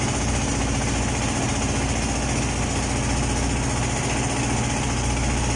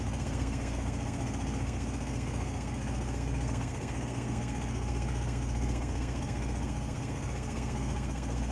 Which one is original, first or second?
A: first